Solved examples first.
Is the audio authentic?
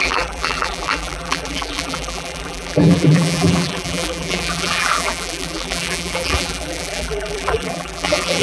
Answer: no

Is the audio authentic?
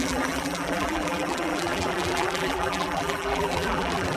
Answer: no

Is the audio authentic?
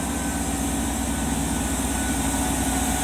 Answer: yes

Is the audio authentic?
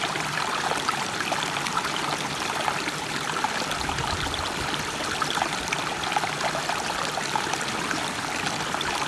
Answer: no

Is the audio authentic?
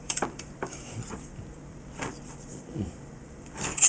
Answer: no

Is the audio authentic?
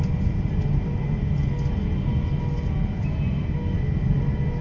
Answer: yes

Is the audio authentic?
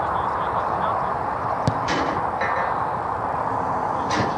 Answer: yes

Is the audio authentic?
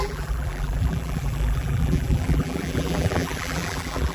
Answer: no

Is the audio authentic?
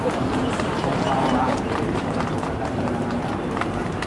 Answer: no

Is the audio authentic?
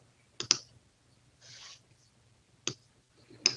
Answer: yes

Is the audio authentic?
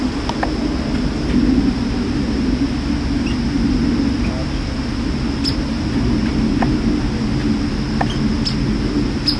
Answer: yes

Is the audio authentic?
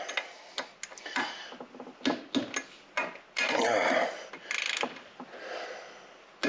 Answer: yes